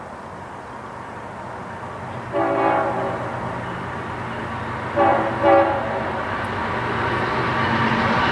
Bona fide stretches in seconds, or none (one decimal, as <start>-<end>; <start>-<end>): 0.0-8.3